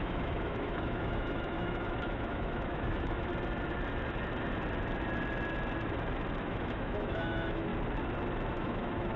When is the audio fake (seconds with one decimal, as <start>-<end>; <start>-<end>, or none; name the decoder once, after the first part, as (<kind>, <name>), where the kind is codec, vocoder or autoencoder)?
0.0-3.3 (autoencoder, DAC-VAE); 6.4-7.7; 8.5-9.2